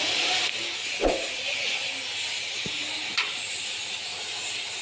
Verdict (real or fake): real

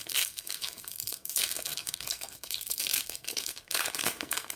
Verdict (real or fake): fake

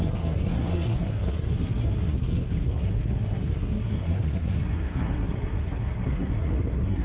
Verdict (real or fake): fake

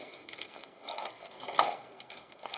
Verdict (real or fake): fake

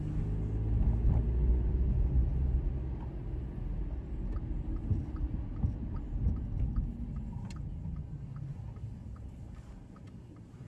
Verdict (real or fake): real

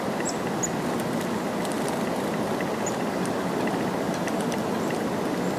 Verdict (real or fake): real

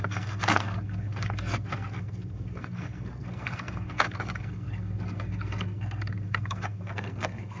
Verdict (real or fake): fake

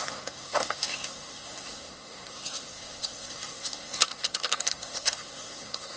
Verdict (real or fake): fake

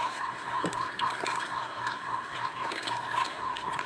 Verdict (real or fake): fake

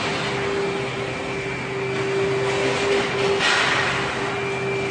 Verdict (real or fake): real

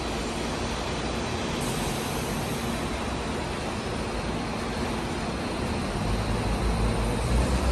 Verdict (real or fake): real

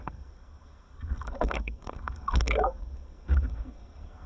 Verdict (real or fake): fake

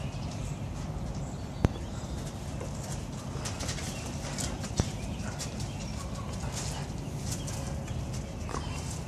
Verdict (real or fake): real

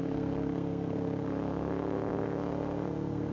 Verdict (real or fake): fake